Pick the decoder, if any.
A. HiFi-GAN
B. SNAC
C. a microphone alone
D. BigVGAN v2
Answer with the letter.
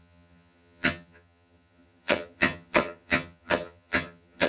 A